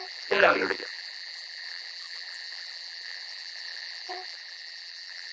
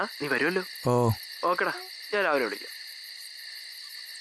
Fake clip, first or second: first